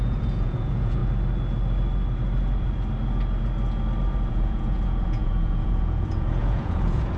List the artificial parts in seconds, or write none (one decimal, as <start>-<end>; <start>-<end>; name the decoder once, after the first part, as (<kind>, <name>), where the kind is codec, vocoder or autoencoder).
0.0-1.0 (vocoder, Vocos); 4.3-7.2